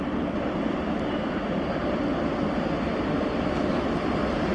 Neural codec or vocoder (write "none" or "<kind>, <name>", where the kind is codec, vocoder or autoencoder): none